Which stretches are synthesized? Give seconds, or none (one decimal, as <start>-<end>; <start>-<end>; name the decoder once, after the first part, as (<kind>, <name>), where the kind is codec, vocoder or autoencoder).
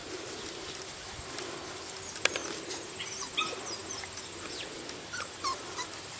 0.0-2.4 (vocoder, BigVGAN v2); 3.0-6.2